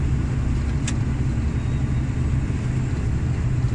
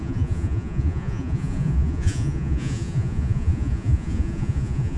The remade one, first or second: second